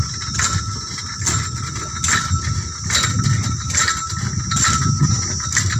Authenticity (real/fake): real